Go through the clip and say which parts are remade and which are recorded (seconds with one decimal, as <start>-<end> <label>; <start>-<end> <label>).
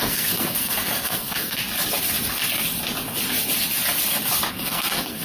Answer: 0.0-1.6 remade; 1.6-4.5 recorded; 4.5-5.2 remade